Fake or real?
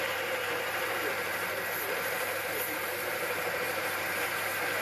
fake